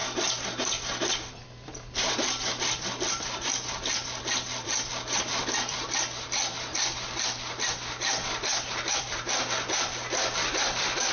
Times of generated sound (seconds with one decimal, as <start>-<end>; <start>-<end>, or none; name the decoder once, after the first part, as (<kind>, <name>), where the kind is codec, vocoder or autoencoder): 1.1-8.5 (vocoder, BigVGAN v2); 9.0-11.1